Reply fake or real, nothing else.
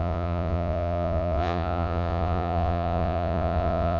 fake